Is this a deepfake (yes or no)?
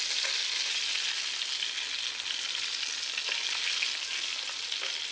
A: no